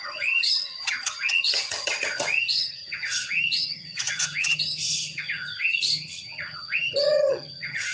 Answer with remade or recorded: remade